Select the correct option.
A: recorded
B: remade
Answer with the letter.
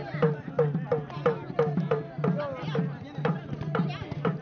A